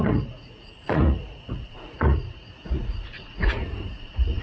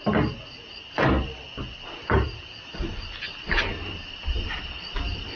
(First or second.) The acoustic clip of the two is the second